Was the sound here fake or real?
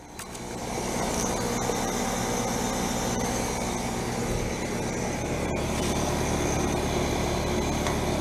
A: real